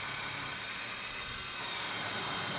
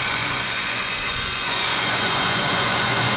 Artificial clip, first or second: second